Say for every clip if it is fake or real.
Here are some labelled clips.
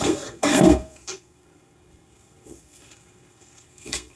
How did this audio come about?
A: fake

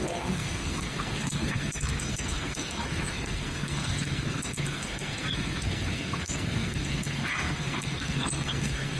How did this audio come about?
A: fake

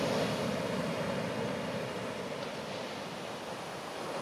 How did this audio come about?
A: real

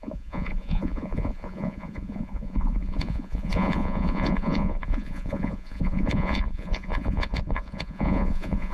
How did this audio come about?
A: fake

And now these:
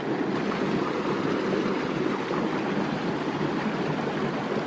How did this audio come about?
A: real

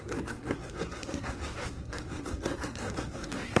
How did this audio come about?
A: fake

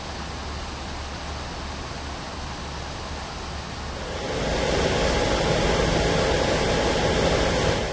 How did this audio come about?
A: real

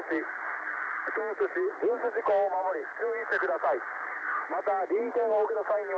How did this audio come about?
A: real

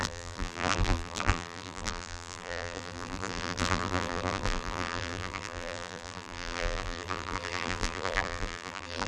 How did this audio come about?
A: fake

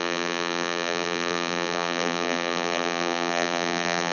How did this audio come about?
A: fake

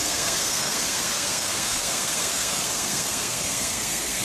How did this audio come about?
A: fake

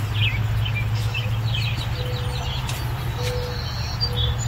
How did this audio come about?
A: real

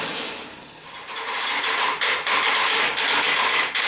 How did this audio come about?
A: fake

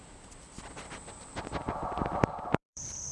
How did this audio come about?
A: fake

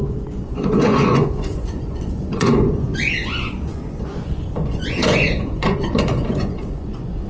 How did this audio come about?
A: fake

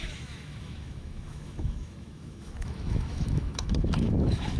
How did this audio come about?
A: fake